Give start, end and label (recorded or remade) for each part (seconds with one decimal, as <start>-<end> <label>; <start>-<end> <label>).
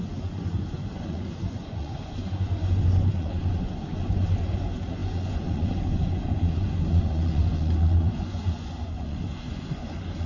0.0-10.3 remade